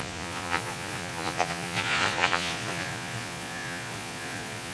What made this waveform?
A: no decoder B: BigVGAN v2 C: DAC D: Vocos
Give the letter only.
D